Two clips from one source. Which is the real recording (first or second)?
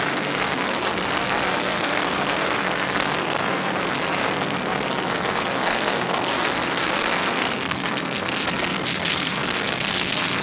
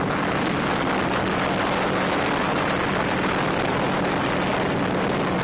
second